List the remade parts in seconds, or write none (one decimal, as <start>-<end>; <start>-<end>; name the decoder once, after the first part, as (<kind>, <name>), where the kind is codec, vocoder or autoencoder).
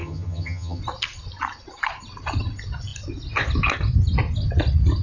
0.0-0.8 (vocoder, HiFi-GAN)